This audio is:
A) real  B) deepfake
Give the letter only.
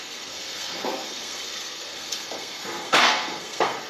B